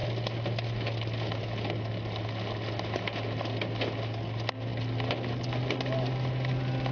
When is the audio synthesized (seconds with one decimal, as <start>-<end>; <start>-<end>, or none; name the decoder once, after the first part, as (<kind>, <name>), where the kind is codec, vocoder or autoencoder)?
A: none